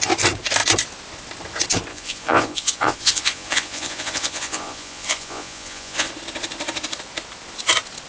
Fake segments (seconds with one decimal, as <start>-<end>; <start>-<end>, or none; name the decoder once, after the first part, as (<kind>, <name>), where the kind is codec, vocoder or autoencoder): 1.9-6.1 (vocoder, Vocos)